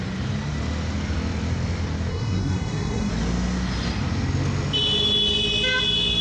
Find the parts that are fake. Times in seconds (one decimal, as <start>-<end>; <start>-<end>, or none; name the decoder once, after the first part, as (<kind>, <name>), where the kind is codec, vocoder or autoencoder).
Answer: 2.1-3.1 (codec, SNAC)